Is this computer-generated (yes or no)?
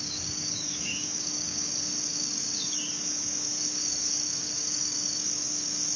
yes